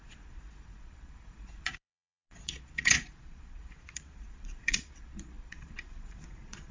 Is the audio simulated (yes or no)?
yes